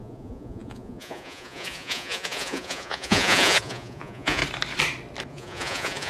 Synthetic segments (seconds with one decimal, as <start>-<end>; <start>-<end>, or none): 0.0-4.4; 5.3-6.1